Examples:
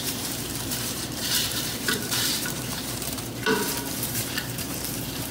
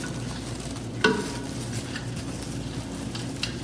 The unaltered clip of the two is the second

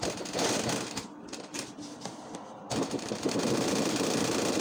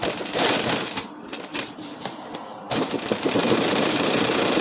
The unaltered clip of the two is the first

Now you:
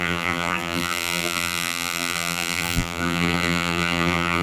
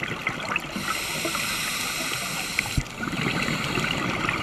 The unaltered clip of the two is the second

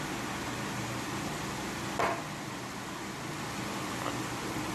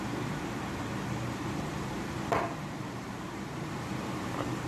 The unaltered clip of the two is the first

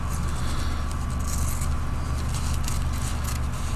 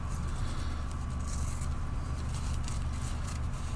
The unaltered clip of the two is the first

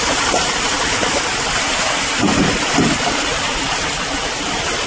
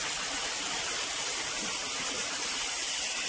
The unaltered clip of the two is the first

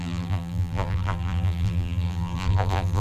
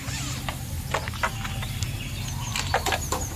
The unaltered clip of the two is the second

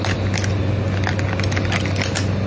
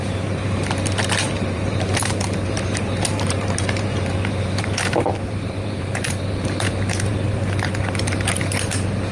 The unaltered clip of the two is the first